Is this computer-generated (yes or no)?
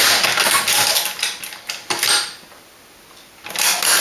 no